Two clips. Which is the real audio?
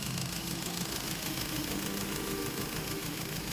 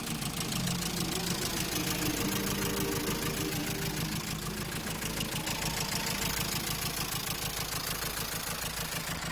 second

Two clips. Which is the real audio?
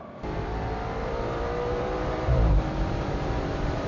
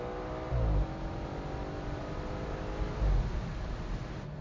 second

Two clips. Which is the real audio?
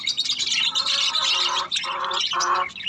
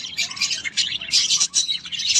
first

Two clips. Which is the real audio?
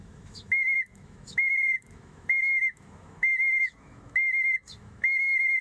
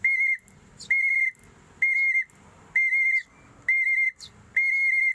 second